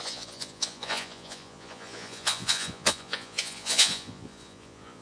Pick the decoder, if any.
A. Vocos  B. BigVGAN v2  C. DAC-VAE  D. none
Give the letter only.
A